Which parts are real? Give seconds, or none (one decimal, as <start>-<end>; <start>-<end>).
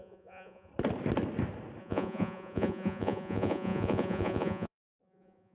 0.7-1.8